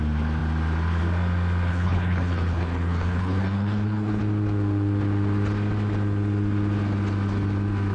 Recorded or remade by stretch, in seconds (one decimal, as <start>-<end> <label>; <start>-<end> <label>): 0.0-1.7 recorded; 1.7-4.2 remade; 4.2-7.9 recorded